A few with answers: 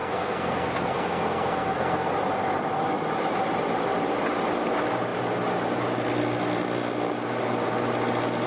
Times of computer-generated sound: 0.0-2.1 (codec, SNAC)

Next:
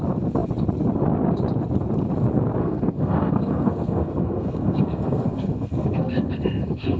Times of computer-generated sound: 2.6-7.0 (codec, SNAC)

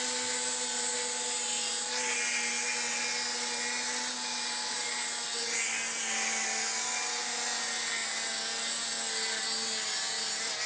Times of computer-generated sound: none

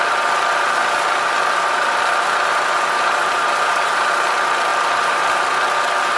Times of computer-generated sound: 2.5-4.1 (vocoder, BigVGAN v2)

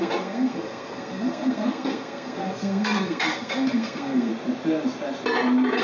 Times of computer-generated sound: 0.0-4.3 (codec, SNAC)